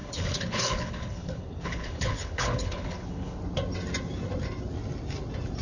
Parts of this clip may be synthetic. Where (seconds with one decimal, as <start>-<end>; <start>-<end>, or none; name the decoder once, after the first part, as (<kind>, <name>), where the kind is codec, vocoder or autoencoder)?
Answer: 0.0-3.4 (codec, HILCodec)